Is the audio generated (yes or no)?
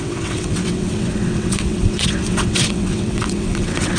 yes